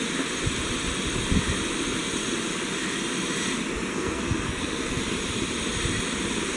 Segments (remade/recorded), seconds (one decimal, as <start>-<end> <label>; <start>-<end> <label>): 0.0-3.9 recorded; 3.9-5.0 remade; 5.0-6.6 recorded